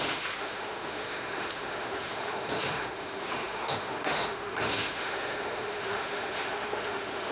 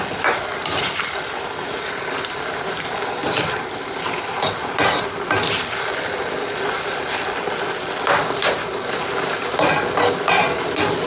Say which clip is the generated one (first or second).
first